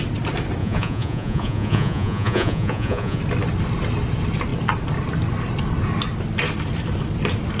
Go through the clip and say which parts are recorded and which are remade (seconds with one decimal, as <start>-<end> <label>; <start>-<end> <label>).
0.0-0.6 recorded; 0.6-3.2 remade; 3.2-7.6 recorded